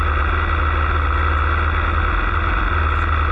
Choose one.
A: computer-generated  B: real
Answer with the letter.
B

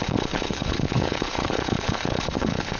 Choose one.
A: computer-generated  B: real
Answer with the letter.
A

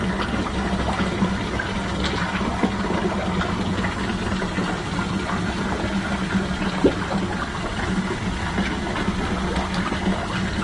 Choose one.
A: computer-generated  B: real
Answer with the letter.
B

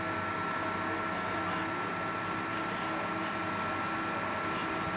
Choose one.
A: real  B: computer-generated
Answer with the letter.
A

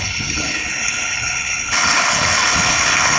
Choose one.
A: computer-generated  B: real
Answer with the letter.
A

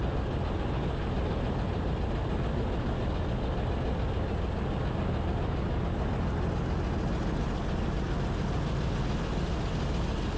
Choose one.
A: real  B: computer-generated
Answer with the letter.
A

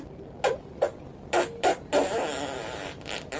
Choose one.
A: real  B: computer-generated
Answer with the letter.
A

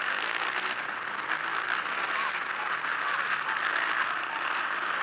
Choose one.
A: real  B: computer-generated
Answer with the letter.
A